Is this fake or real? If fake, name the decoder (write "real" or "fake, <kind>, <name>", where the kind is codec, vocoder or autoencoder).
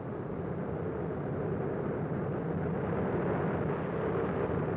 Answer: real